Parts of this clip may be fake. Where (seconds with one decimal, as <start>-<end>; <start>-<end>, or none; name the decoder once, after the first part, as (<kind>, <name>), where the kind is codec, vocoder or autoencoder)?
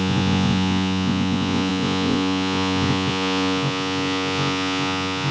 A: 0.0-5.3 (vocoder, Vocos)